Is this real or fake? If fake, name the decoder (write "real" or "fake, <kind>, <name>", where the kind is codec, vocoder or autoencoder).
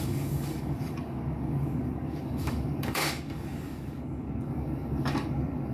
fake, codec, DAC